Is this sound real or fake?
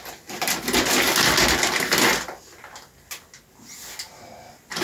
real